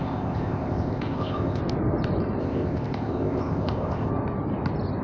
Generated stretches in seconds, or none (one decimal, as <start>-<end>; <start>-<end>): 0.0-1.6; 2.4-4.1